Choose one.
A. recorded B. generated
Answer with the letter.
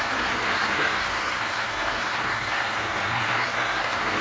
B